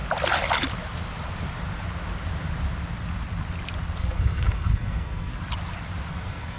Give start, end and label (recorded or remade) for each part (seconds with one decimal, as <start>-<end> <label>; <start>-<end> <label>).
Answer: 0.0-4.0 recorded; 4.0-5.3 remade; 5.3-6.1 recorded; 6.1-6.6 remade